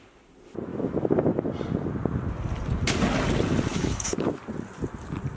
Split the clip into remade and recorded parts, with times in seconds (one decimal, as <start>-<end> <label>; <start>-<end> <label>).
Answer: 0.0-0.7 recorded; 0.7-1.5 remade; 1.5-3.7 recorded; 3.7-4.4 remade; 4.4-5.4 recorded